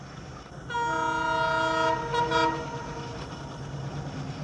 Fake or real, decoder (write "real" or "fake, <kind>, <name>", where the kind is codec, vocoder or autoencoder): real